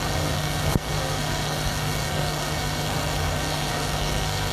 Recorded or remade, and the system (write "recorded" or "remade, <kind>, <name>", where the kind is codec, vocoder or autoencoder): remade, codec, SNAC